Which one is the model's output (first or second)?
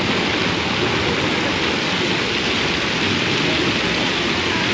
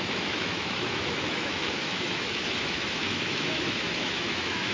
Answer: second